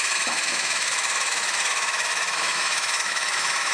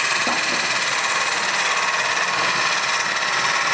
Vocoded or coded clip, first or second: first